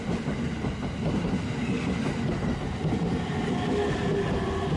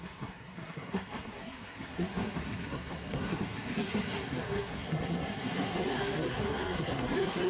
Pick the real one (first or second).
first